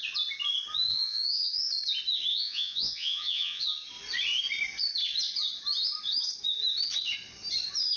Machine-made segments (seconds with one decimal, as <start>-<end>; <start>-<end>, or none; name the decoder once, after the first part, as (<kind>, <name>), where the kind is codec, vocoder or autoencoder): 0.9-1.7 (vocoder, Vocos); 2.3-3.6